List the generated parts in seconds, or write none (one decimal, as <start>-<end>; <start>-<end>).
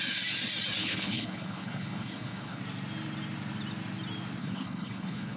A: 0.8-2.6; 4.4-5.4